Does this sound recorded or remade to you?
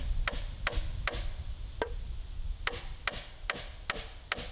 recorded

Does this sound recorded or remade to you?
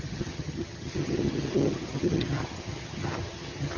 remade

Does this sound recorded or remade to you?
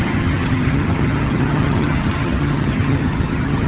remade